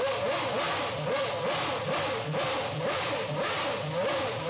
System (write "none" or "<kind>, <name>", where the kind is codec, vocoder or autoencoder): none